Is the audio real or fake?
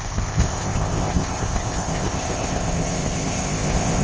fake